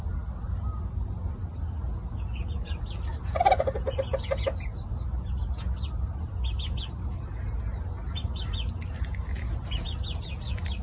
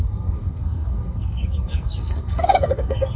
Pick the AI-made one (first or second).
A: second